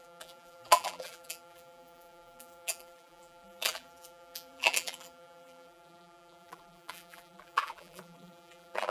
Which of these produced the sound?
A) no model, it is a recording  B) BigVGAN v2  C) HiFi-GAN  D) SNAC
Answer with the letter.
B